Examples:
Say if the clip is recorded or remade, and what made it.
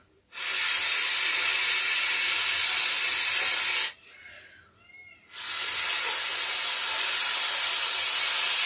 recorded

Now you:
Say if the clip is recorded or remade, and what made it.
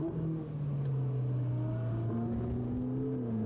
recorded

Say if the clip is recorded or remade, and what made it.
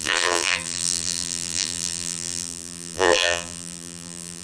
remade, vocoder, BigVGAN v2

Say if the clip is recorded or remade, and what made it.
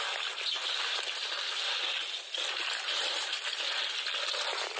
recorded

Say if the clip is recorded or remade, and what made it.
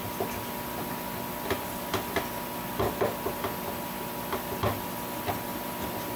recorded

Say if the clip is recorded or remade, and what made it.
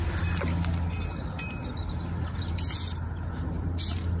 recorded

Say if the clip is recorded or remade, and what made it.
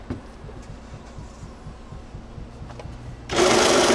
recorded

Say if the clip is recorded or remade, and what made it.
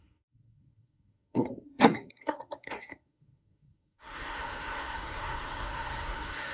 remade, codec, SNAC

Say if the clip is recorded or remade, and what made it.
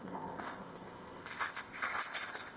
remade, codec, ZipCodec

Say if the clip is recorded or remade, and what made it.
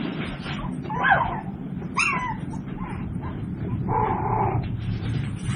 remade, vocoder, BigVGAN v2